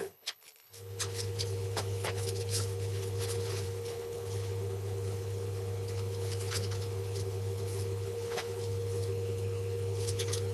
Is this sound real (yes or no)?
no